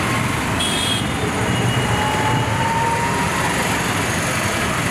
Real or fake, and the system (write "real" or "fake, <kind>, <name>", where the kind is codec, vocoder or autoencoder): real